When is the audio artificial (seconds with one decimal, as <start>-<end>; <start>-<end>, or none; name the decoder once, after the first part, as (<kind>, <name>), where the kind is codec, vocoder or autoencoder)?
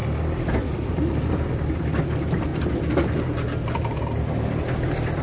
0.0-2.5 (vocoder, BigVGAN v2); 4.2-5.2